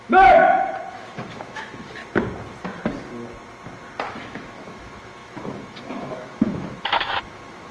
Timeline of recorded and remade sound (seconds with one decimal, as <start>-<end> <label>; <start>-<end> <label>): 0.0-0.4 remade; 0.4-0.9 recorded; 0.9-2.0 remade; 2.0-4.1 recorded; 4.1-7.7 remade